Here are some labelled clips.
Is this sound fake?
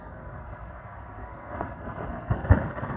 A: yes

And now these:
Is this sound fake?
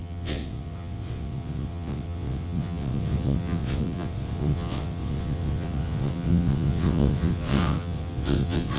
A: yes